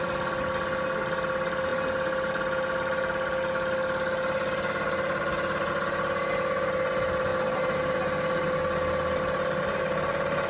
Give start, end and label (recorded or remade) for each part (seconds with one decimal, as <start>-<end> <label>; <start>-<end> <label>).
0.0-10.5 recorded